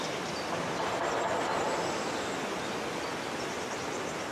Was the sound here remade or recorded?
recorded